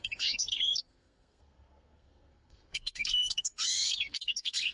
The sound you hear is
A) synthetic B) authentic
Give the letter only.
A